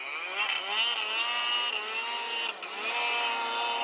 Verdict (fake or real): real